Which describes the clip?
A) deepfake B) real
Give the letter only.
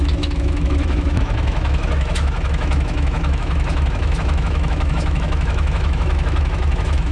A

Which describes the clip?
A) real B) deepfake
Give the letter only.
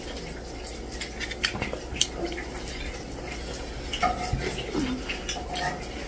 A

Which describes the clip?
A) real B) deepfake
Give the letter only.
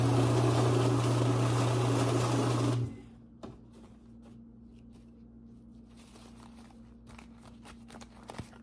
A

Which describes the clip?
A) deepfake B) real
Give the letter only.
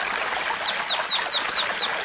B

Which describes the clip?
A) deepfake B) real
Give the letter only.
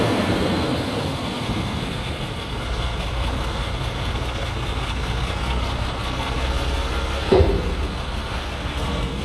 A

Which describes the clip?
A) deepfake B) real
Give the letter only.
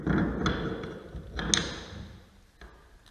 B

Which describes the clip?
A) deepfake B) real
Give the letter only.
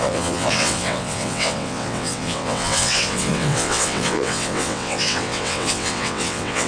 A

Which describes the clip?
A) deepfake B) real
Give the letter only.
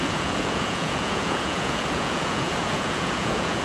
A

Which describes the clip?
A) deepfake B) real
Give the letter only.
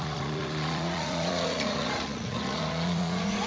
A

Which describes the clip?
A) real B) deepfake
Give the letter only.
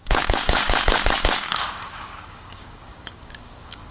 B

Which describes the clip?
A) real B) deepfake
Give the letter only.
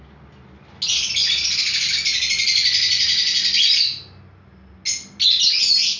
A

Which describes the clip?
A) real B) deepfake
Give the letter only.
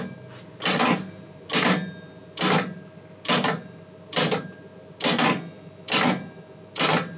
A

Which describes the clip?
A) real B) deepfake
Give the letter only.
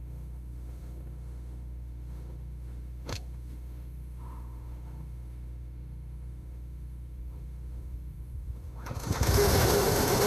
B